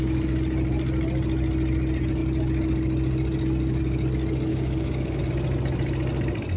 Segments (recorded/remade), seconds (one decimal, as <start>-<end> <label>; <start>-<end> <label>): 0.0-4.5 recorded; 4.5-5.2 remade; 5.2-6.6 recorded